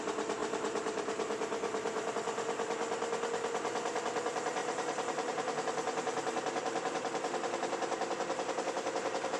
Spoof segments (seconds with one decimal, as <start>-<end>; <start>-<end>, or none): 0.4-2.1; 4.6-9.4